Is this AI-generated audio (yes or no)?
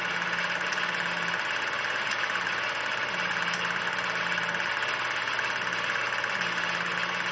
no